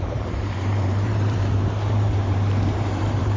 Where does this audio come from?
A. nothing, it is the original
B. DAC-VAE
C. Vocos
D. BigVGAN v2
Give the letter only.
D